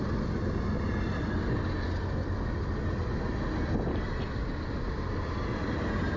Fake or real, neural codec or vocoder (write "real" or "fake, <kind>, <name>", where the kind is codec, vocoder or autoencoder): real